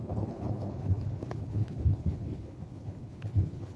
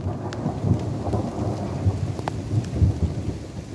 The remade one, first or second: first